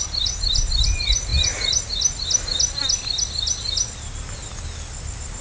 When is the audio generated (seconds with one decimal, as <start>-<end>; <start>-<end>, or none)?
none

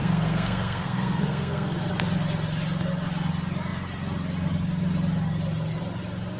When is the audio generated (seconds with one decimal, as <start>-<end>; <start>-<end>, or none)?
0.0-1.9

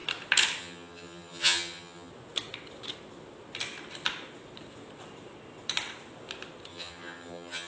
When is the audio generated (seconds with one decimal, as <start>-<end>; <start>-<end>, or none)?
0.6-2.1; 6.7-7.7

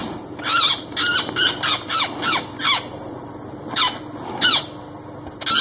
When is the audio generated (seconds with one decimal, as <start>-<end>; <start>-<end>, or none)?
none

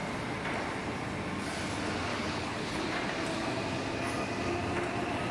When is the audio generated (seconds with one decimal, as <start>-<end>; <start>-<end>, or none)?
2.1-2.8

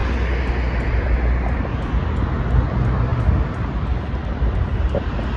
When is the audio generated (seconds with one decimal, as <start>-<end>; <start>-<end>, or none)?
none